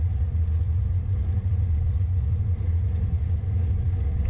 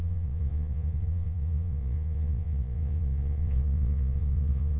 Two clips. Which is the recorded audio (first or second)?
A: first